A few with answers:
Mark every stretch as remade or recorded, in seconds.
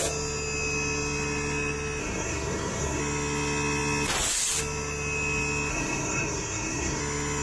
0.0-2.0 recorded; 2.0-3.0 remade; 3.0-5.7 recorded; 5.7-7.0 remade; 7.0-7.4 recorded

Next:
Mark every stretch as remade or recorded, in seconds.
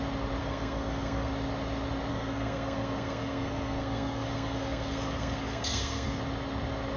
0.0-0.4 recorded; 0.4-1.3 remade; 1.3-2.1 recorded; 2.1-6.2 remade; 6.2-7.0 recorded